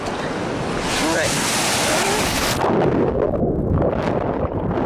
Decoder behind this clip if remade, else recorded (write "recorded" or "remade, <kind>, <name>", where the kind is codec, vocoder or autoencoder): recorded